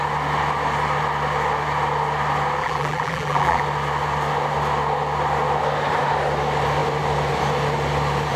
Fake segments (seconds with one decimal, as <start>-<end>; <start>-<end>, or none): 2.6-3.6